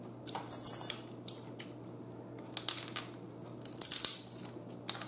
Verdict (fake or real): real